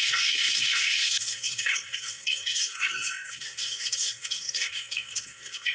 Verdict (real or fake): fake